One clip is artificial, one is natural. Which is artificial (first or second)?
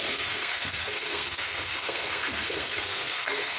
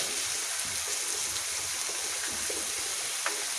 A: first